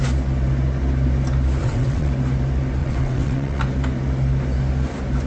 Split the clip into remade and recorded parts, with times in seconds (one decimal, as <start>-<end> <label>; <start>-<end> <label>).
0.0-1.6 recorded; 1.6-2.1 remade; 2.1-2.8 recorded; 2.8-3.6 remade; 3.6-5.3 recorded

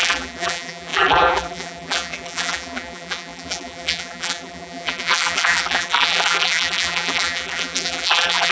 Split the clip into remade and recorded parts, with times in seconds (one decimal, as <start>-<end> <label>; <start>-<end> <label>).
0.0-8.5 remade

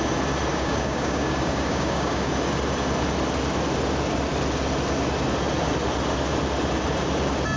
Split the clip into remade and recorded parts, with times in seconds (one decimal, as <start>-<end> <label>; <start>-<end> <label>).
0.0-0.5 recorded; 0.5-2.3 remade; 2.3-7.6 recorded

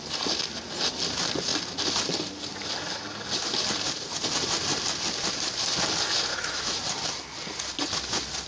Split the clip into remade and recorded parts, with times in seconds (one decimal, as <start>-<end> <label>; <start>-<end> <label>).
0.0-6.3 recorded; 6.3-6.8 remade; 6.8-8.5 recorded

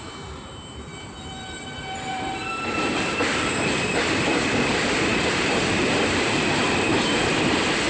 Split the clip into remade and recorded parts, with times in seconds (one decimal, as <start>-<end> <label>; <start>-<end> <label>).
0.0-7.9 remade